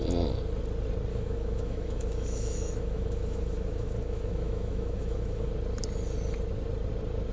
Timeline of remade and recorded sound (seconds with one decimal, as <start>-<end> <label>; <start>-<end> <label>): 0.0-1.1 recorded; 1.1-5.5 remade; 5.5-7.3 recorded